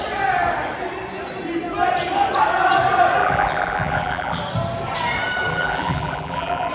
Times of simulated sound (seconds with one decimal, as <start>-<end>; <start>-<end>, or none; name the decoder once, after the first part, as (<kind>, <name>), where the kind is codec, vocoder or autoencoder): 3.2-4.4 (vocoder, BigVGAN v2); 5.5-6.7